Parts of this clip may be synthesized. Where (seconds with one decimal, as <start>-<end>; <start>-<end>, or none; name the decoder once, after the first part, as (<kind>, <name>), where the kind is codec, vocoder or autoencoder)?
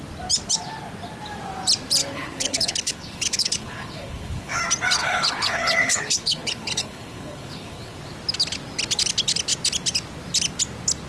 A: 2.0-4.6 (codec, HILCodec); 5.0-8.0